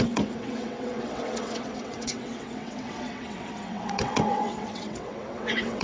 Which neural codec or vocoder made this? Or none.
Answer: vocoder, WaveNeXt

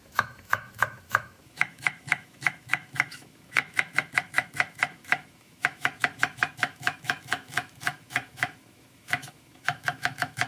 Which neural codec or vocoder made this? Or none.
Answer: autoencoder, DAC-VAE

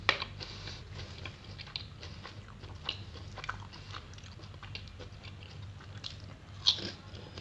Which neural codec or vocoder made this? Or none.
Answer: none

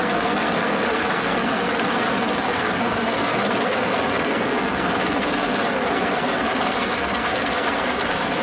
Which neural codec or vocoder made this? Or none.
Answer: codec, SNAC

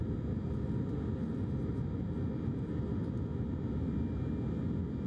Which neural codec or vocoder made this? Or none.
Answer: none